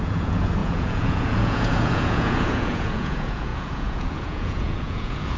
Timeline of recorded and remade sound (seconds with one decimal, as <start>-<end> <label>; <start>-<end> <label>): 0.0-5.4 remade